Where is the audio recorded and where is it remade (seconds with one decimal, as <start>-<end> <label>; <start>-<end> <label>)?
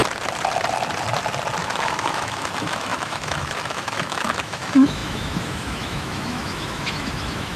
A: 0.0-1.6 recorded; 1.6-7.6 remade